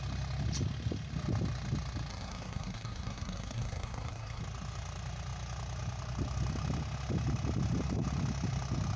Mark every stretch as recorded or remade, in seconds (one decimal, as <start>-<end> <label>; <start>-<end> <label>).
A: 0.0-2.1 recorded; 2.1-4.4 remade; 4.4-9.0 recorded

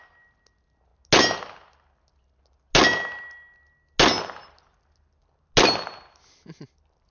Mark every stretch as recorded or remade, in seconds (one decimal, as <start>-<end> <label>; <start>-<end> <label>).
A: 0.0-7.1 recorded

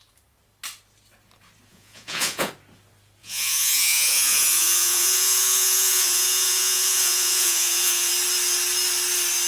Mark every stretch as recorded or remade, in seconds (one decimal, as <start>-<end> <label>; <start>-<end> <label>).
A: 0.0-1.7 recorded; 1.7-2.5 remade; 2.5-3.2 recorded; 3.2-8.1 remade; 8.1-9.5 recorded

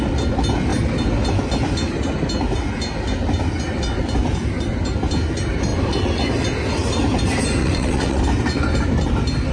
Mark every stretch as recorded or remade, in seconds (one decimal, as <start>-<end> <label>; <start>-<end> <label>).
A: 0.0-7.6 recorded; 7.6-8.2 remade; 8.2-9.5 recorded

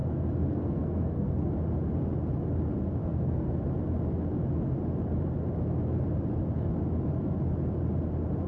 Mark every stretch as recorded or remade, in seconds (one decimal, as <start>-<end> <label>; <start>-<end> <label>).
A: 0.0-1.5 remade; 1.5-3.0 recorded; 3.0-3.6 remade; 3.6-8.5 recorded

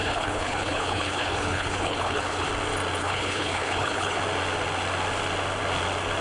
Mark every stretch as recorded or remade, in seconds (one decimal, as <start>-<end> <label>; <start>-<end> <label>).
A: 0.0-2.5 remade; 2.5-3.0 recorded; 3.0-4.2 remade; 4.2-6.2 recorded